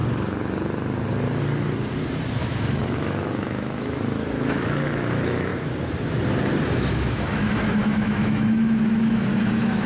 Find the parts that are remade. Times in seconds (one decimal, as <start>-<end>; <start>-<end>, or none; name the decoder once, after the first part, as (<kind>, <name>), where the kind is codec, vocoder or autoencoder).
2.4-5.5 (autoencoder, DAC-VAE); 6.8-9.9